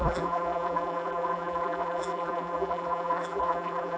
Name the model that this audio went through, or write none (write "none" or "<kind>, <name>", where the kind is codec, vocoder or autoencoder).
vocoder, BigVGAN v2